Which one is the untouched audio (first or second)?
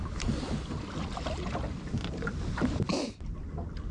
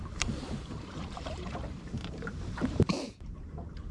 first